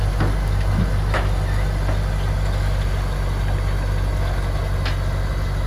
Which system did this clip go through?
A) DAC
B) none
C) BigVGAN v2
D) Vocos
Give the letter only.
B